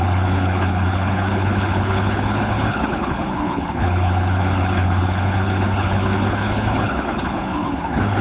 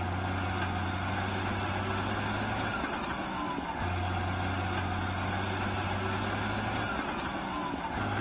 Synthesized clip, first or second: first